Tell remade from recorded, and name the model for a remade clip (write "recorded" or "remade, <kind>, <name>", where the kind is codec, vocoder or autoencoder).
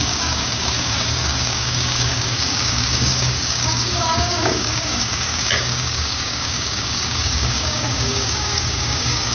remade, codec, DAC